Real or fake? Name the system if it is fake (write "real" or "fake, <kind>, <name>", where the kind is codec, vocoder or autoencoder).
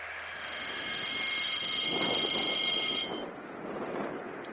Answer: real